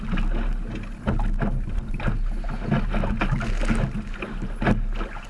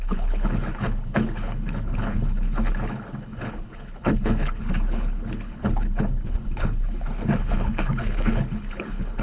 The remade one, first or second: second